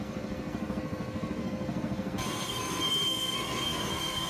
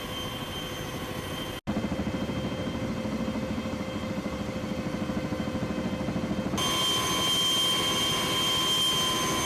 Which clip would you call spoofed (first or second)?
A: first